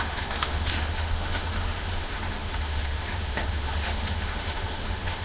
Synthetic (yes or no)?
yes